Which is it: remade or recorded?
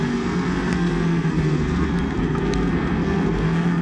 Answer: remade